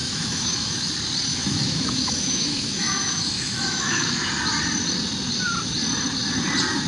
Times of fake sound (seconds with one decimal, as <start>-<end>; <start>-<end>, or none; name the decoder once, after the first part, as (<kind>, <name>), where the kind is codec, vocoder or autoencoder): 0.0-0.9 (autoencoder, DAC-VAE); 1.3-4.3